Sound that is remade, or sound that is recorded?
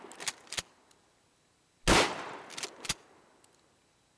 recorded